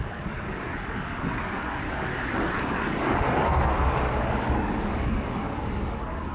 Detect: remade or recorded remade